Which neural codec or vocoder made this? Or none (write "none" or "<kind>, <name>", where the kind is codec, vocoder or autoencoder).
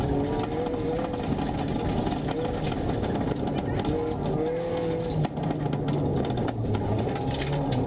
none